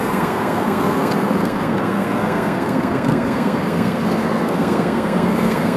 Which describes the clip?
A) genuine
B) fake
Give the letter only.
B